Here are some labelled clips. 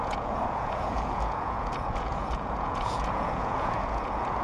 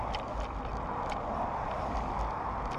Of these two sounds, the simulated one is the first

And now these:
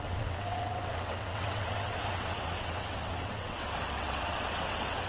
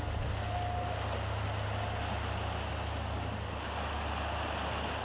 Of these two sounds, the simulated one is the first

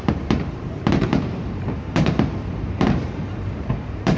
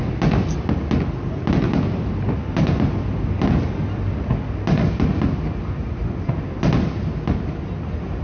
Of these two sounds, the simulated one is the first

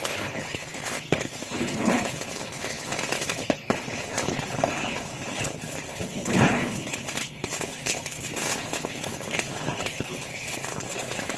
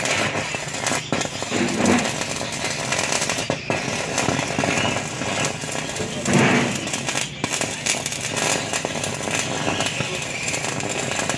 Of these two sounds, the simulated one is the first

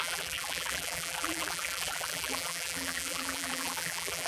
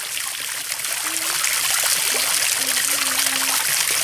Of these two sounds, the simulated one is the first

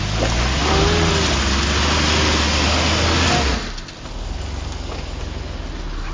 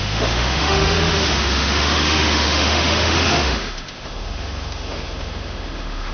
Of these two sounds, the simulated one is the second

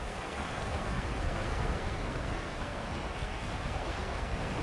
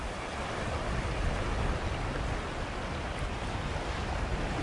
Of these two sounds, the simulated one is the first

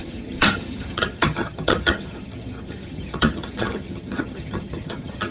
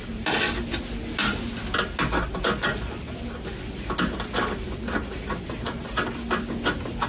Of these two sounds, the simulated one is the first